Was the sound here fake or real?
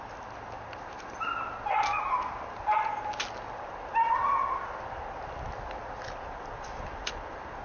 real